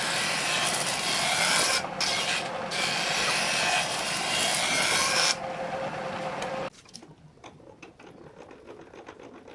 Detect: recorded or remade recorded